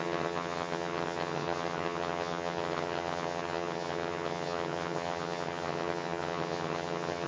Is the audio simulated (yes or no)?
yes